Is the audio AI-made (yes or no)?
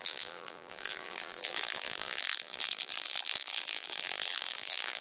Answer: yes